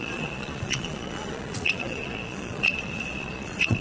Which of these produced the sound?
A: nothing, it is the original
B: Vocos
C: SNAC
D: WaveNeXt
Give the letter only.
B